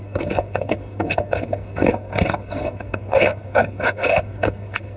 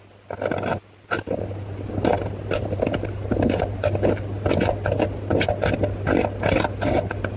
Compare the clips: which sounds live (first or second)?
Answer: second